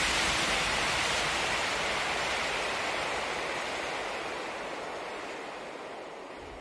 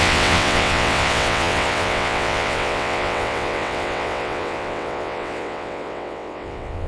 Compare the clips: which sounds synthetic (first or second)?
second